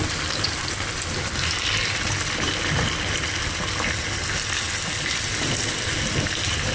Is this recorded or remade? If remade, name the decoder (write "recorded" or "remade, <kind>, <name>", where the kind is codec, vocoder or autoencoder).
recorded